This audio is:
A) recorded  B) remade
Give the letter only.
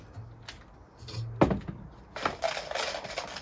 A